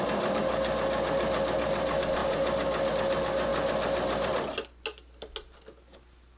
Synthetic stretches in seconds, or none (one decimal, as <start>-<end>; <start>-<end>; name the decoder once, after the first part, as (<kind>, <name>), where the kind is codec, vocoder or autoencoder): none